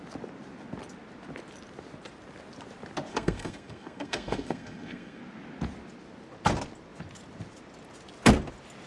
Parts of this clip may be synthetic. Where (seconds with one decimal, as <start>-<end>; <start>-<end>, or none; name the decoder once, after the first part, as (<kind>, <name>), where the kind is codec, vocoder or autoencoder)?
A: 3.1-5.2 (codec, SNAC)